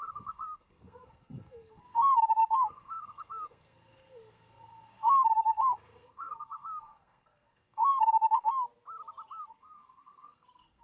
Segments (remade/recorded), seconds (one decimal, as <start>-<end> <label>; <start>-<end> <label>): 0.0-8.5 remade; 8.5-9.4 recorded; 9.4-10.8 remade